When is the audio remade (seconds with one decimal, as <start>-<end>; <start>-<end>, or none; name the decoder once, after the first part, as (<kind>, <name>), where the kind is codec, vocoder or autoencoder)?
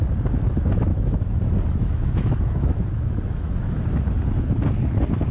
0.9-3.8 (autoencoder, DAC-VAE)